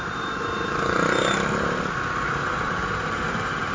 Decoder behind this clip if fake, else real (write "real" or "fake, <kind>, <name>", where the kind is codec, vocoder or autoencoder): real